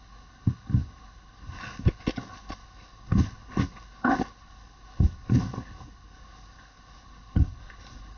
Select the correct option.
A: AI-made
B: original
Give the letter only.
A